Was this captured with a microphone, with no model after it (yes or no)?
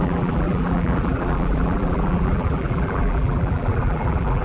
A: no